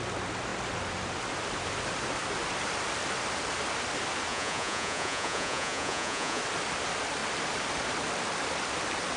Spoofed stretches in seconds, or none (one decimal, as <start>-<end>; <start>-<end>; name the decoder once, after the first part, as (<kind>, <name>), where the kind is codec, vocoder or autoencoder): 4.3-6.4 (vocoder, Vocos)